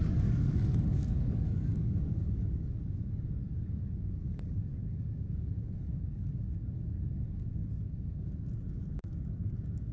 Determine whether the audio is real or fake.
fake